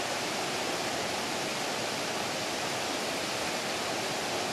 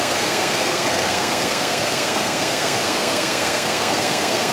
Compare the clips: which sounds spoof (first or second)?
second